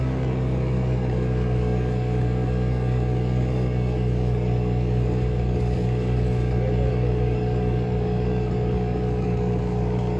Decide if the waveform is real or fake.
fake